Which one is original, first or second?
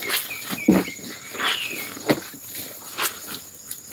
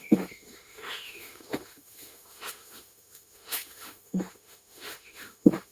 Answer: first